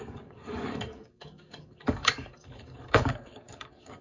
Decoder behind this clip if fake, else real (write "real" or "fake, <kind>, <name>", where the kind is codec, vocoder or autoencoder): fake, codec, DAC